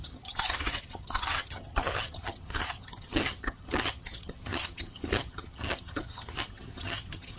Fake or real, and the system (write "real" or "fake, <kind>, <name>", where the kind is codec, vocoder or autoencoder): fake, vocoder, HiFi-GAN